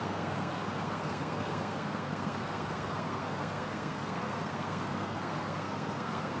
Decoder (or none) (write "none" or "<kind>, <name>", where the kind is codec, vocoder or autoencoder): codec, SNAC